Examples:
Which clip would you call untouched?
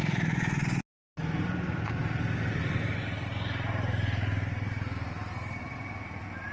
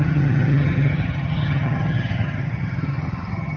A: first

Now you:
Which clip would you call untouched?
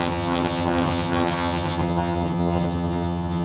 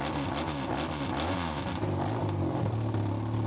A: second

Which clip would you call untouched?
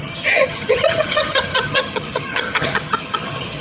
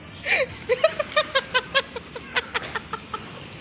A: second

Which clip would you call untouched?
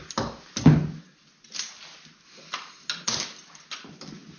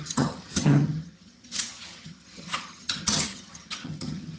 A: first